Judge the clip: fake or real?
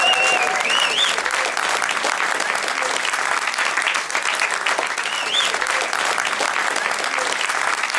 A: fake